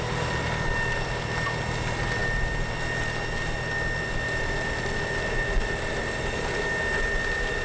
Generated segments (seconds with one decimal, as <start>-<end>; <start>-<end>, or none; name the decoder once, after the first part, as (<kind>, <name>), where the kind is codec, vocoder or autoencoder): none